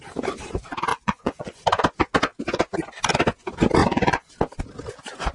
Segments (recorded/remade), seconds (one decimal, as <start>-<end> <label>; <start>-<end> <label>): 0.0-0.9 recorded; 0.9-1.6 remade; 1.6-3.8 recorded; 3.8-4.3 remade; 4.3-5.3 recorded